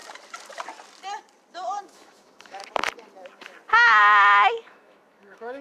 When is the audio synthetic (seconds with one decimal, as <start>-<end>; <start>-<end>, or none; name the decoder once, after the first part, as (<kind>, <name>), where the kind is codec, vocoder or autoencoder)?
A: 1.8-2.6 (autoencoder, DAC-VAE); 4.0-5.6